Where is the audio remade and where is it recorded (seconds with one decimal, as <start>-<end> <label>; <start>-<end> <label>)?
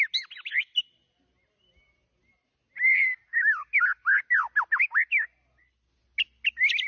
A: 0.0-6.9 recorded